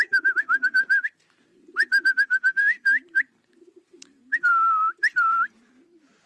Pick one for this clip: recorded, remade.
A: remade